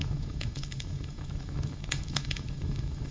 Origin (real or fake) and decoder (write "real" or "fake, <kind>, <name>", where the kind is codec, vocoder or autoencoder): fake, autoencoder, DAC-VAE